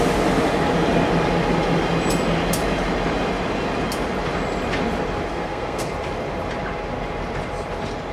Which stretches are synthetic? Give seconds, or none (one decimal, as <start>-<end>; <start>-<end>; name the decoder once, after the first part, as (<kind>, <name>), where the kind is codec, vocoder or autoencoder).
5.3-5.9 (codec, SNAC)